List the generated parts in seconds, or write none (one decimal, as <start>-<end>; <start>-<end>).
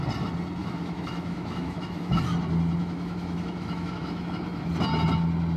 0.6-2.2; 2.8-4.7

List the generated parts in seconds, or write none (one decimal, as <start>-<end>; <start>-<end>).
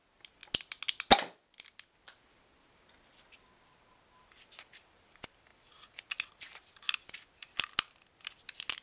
none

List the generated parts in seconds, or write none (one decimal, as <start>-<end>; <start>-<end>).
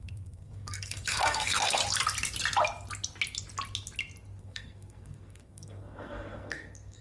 0.0-1.8; 4.4-7.0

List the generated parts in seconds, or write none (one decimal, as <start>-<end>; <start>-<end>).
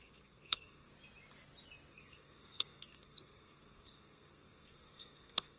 0.0-0.9; 1.9-5.6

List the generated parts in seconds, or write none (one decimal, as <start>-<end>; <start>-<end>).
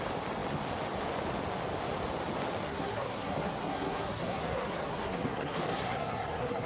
2.6-6.7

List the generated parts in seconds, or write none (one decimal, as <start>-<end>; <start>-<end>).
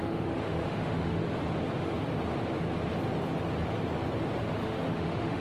0.0-1.2; 4.4-5.4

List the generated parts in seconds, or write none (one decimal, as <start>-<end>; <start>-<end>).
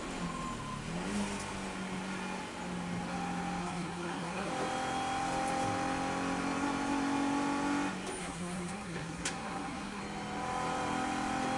3.6-4.5; 8.2-10.0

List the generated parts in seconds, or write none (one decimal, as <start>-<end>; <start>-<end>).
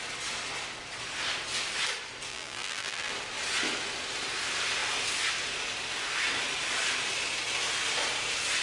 2.3-3.1